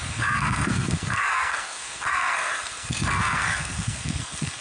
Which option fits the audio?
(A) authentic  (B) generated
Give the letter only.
B